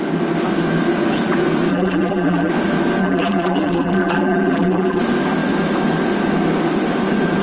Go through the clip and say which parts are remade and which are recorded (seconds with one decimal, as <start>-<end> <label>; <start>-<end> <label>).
0.0-1.7 recorded; 1.7-2.5 remade; 2.5-3.0 recorded; 3.0-5.0 remade; 5.0-7.4 recorded